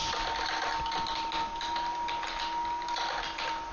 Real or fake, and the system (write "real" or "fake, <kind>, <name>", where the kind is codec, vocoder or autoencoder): real